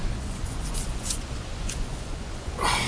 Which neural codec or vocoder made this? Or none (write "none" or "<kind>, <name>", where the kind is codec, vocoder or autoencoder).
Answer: vocoder, Vocos